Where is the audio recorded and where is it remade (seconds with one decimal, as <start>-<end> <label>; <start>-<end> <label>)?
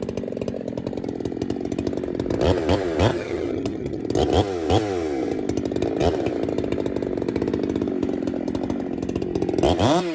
0.0-3.1 recorded; 3.1-4.0 remade; 4.0-10.1 recorded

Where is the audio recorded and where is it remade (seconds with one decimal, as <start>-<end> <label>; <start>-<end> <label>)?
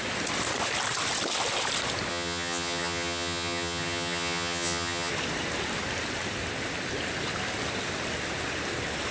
0.0-2.1 recorded; 2.1-5.1 remade; 5.1-9.1 recorded